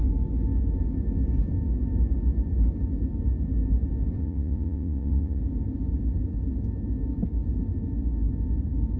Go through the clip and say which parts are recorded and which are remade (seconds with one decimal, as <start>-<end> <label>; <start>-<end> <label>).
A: 0.0-4.2 recorded; 4.2-5.4 remade; 5.4-9.0 recorded